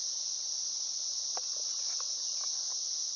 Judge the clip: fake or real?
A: real